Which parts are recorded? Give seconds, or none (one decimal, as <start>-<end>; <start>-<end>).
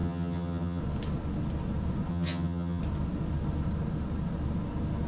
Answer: 0.8-2.1; 2.8-5.1